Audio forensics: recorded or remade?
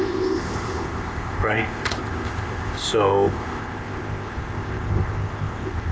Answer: remade